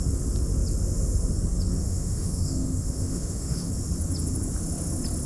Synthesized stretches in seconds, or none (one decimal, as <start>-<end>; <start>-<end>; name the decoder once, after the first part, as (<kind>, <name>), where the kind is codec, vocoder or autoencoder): 1.8-3.7 (autoencoder, DAC-VAE)